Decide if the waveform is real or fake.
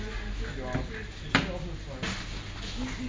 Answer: real